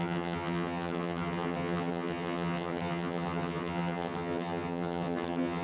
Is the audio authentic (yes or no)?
no